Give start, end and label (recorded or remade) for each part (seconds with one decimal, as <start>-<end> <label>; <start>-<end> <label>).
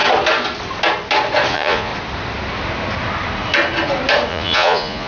0.0-1.5 recorded; 1.5-1.9 remade; 1.9-4.3 recorded; 4.3-5.1 remade